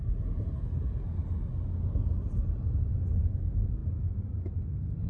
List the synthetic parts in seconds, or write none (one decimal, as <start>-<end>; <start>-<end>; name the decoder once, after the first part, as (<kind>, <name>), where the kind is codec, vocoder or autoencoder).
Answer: none